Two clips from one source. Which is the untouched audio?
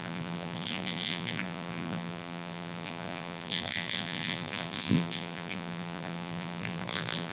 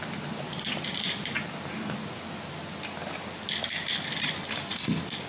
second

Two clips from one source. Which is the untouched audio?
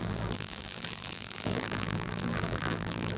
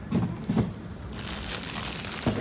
second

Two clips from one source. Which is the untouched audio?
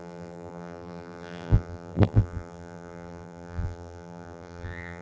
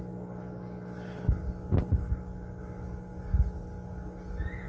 second